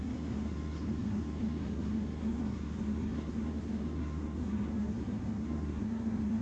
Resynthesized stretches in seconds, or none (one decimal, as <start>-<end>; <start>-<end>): 0.0-6.4